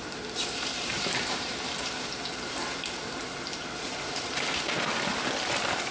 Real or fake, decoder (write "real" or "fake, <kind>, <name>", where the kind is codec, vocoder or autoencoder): fake, vocoder, BigVGAN v2